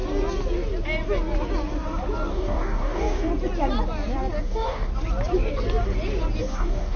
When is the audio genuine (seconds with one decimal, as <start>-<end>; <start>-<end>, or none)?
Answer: 0.0-2.3; 3.3-4.4; 4.9-6.4